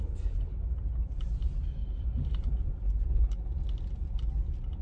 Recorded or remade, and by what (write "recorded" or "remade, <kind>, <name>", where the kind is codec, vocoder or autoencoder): recorded